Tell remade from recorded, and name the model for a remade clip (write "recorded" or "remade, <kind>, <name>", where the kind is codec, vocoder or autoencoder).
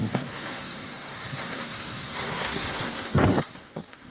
remade, codec, SNAC